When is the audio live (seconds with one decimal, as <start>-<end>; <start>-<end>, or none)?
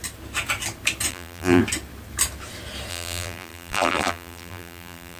0.0-1.1; 1.6-2.9